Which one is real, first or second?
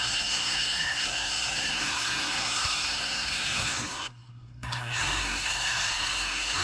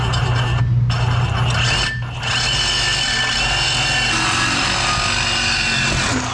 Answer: second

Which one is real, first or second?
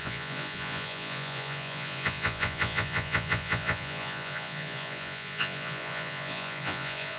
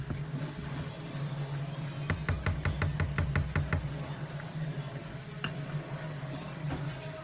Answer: second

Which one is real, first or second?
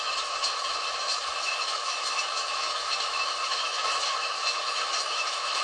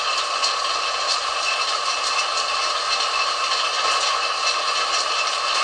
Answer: second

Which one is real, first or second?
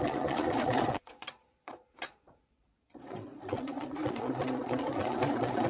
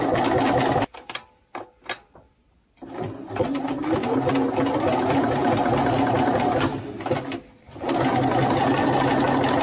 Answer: second